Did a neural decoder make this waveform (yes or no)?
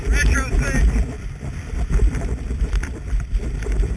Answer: yes